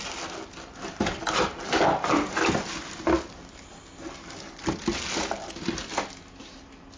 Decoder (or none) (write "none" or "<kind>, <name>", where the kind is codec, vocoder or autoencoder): none